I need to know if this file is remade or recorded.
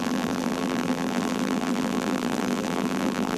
remade